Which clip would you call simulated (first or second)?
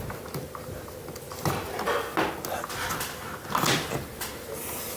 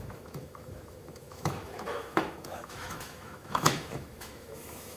second